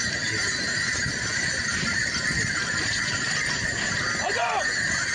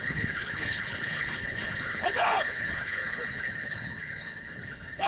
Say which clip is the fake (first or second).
second